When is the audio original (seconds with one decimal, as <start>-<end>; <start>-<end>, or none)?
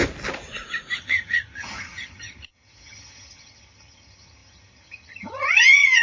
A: 0.0-1.0